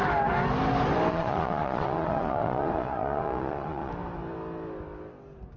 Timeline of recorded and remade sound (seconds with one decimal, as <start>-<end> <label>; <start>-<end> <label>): 0.0-1.1 recorded; 1.1-3.9 remade; 3.9-5.6 recorded